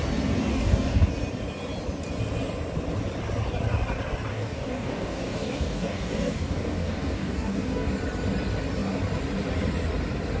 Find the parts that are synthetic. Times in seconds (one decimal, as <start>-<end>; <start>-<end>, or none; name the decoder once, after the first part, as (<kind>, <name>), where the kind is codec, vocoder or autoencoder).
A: 0.5-1.1 (codec, DAC); 4.3-7.9